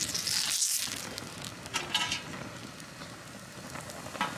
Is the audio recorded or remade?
recorded